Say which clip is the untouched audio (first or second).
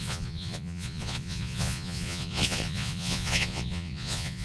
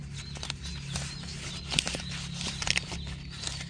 second